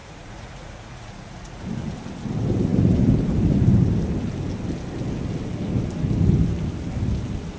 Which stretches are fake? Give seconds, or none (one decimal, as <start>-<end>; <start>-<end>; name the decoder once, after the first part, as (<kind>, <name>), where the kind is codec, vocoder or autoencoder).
0.0-1.6 (vocoder, Vocos)